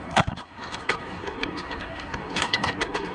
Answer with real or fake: fake